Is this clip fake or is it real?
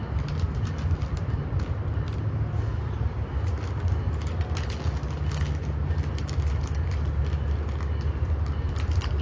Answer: real